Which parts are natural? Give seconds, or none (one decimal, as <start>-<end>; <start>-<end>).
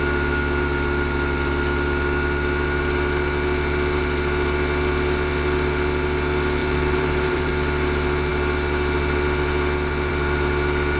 0.0-6.6; 7.5-11.0